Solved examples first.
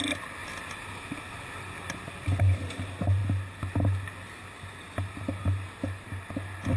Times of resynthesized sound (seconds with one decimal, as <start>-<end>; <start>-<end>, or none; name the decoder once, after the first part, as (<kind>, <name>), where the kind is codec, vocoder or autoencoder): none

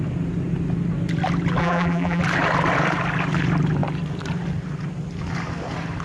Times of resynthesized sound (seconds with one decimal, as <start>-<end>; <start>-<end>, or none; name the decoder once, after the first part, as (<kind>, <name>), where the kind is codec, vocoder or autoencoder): 1.6-2.2 (vocoder, BigVGAN v2)

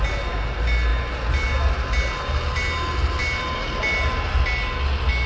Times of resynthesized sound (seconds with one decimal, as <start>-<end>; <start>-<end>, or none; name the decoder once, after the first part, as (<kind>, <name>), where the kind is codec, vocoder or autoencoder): none

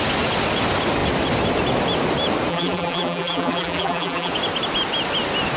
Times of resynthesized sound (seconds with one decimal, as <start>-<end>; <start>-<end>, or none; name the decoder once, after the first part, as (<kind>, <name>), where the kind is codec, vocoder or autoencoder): 2.5-4.3 (vocoder, BigVGAN v2)

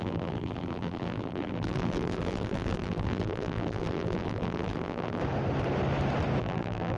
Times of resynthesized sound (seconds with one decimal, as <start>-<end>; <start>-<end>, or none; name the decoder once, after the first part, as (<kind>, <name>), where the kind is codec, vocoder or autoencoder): 0.0-5.2 (vocoder, BigVGAN v2); 6.4-7.0

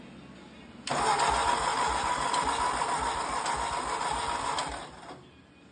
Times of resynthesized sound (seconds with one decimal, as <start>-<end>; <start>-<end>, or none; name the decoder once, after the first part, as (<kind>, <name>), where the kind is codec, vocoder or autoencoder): 1.7-5.1 (vocoder, BigVGAN v2)

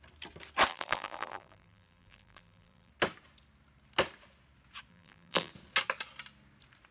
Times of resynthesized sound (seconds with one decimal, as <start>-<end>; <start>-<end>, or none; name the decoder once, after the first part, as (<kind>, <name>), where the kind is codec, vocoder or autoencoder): 0.7-2.9 (vocoder, BigVGAN v2); 4.9-5.5